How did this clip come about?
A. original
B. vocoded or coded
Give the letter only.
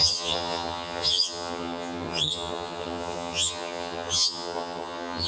B